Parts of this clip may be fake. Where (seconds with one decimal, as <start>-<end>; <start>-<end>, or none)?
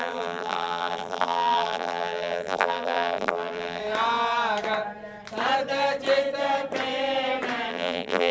0.0-3.8; 7.7-8.3